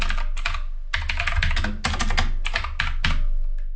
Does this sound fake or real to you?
real